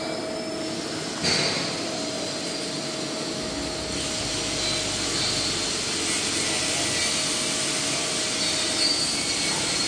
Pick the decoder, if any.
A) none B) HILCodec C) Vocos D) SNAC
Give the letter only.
A